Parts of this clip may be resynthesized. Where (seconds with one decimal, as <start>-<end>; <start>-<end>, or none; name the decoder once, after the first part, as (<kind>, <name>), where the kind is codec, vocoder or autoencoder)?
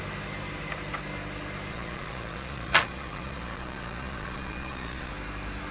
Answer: 1.7-5.1 (vocoder, Vocos)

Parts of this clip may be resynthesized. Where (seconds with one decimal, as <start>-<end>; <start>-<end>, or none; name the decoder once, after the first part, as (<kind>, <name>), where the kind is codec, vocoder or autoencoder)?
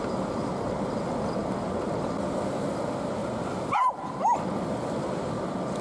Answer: 3.2-3.9 (vocoder, BigVGAN v2)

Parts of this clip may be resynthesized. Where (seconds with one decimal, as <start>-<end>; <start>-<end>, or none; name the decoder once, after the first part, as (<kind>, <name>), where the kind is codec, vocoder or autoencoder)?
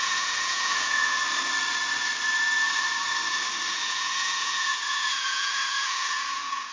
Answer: 0.0-1.2 (vocoder, Vocos); 3.7-6.7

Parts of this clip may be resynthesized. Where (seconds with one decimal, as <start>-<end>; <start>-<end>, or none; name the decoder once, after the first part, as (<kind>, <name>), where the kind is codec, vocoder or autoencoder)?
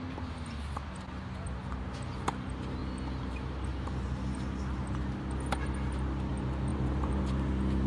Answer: 6.7-7.2 (vocoder, BigVGAN v2)